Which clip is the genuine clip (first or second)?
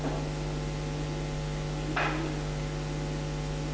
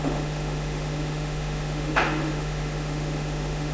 first